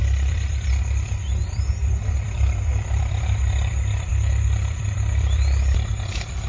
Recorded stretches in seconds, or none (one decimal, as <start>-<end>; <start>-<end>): none